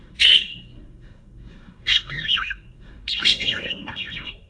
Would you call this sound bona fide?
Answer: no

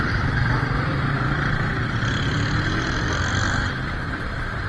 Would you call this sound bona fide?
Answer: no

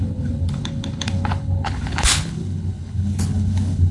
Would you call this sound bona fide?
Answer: no